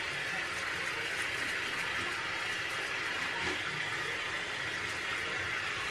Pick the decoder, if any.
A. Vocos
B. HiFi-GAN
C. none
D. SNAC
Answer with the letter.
C